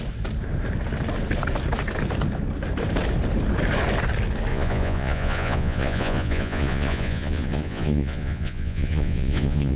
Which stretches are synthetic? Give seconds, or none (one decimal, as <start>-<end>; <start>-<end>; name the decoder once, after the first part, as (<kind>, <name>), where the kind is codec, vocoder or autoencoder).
4.5-9.8 (vocoder, Vocos)